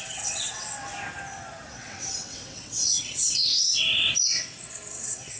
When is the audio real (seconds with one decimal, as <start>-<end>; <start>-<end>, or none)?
0.9-1.7; 3.7-4.9